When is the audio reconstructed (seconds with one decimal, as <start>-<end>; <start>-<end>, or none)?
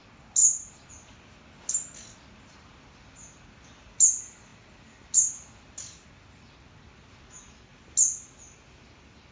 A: none